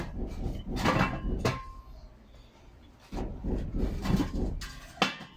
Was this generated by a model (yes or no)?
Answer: no